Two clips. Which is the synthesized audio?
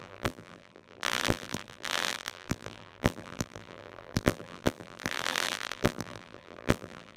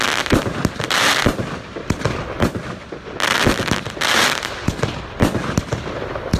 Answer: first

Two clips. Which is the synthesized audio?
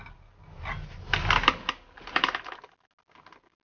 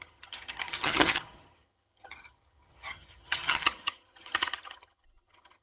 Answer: second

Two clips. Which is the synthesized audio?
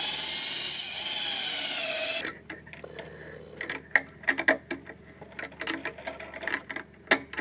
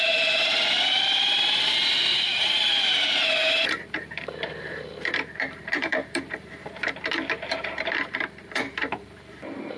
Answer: second